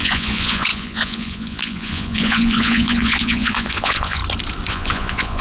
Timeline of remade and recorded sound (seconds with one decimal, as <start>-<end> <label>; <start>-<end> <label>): 0.0-4.2 remade; 4.2-4.7 recorded; 4.7-5.4 remade